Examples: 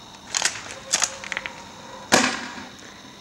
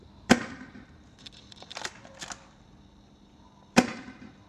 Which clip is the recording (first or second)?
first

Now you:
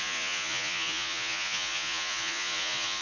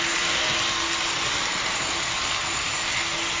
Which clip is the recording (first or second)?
second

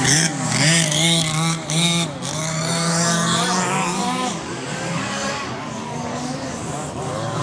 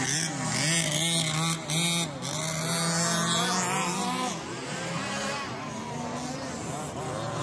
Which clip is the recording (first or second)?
second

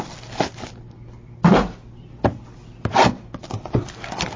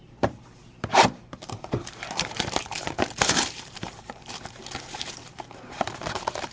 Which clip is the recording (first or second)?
first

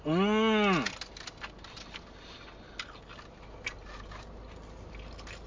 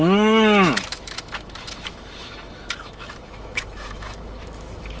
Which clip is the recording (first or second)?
first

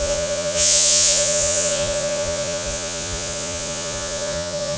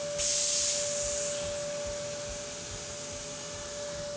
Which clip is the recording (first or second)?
second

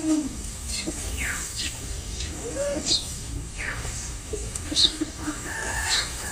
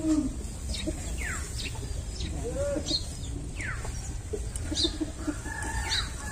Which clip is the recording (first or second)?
second